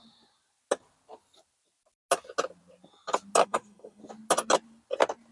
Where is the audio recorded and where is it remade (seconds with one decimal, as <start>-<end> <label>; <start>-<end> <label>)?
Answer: 0.0-3.4 recorded; 3.4-4.0 remade; 4.0-5.3 recorded